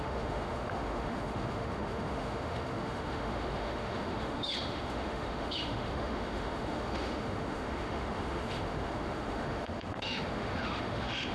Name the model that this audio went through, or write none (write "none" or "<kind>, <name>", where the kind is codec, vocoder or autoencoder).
autoencoder, DAC-VAE